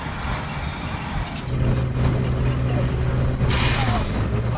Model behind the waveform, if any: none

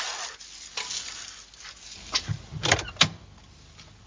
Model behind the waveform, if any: none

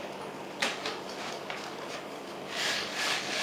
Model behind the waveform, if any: codec, DAC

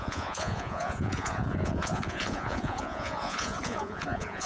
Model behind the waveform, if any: vocoder, Vocos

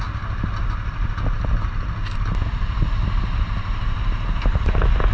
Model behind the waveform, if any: none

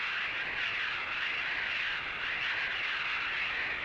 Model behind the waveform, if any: none